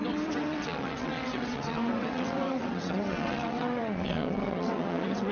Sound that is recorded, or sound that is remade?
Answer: remade